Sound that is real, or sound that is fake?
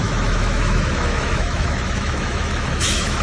fake